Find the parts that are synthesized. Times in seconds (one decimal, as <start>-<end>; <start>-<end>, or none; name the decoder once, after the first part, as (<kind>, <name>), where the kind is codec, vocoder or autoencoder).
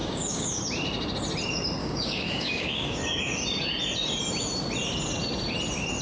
0.0-0.6 (codec, DAC); 1.8-3.0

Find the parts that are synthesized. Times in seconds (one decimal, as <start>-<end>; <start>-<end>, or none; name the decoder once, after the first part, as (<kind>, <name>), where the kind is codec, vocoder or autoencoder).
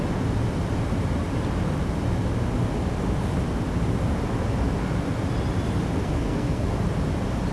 6.0-6.8 (codec, SNAC)